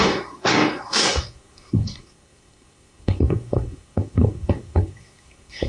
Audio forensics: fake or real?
fake